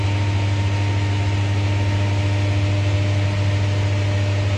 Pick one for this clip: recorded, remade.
recorded